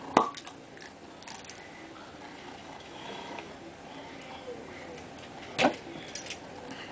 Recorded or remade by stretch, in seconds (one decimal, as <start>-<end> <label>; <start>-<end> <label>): 0.0-2.6 recorded; 2.6-3.5 remade; 3.5-6.9 recorded